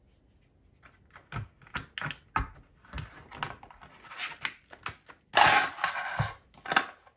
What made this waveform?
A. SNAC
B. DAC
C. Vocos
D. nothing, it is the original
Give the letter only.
D